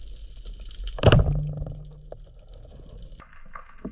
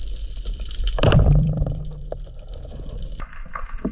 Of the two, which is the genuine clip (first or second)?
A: first